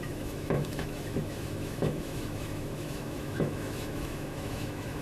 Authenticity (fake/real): fake